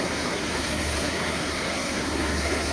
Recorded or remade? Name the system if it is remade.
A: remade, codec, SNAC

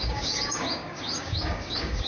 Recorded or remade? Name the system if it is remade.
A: remade, codec, DAC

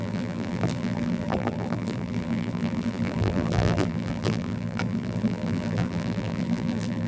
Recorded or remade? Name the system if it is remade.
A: remade, vocoder, BigVGAN v2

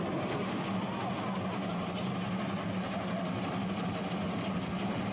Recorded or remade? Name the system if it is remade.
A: recorded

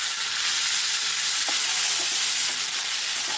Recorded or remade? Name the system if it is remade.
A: recorded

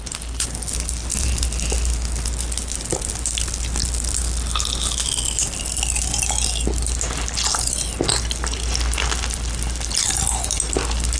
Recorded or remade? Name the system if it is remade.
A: recorded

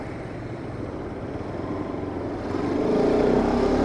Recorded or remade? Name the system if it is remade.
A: recorded